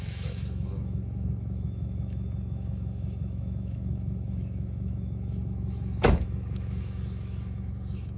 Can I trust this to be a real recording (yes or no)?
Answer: no